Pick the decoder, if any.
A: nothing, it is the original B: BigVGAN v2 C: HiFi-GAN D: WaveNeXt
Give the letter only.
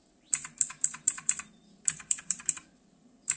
B